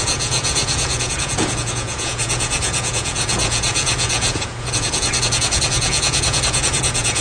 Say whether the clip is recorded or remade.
remade